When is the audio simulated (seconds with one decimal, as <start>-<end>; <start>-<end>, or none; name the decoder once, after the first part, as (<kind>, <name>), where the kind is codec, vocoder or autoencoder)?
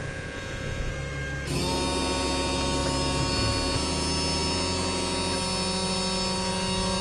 0.0-0.9 (vocoder, Vocos)